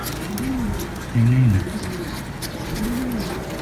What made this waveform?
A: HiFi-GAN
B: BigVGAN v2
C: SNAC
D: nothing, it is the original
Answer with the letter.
D